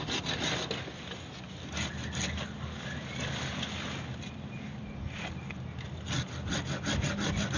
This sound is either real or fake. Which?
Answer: real